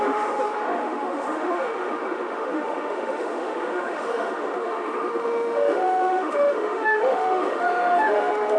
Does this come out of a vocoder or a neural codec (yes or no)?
yes